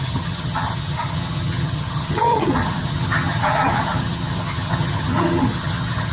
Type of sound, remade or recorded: remade